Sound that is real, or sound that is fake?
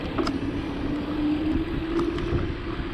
real